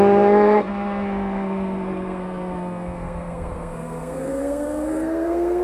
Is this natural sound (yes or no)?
no